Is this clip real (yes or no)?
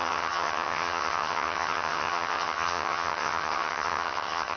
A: no